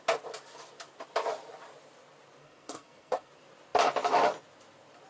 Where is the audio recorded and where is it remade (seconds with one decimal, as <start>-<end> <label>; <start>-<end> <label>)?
0.0-2.4 recorded; 2.4-3.3 remade; 3.3-5.1 recorded